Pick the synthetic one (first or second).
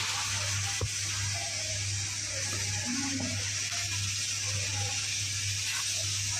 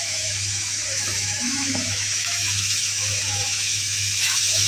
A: second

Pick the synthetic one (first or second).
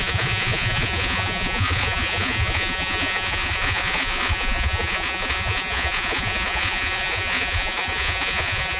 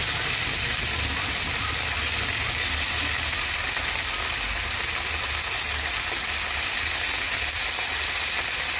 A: first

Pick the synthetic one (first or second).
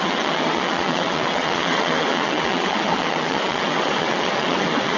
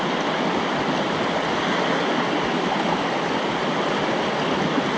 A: first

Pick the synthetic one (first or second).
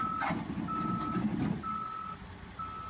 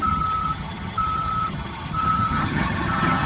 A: second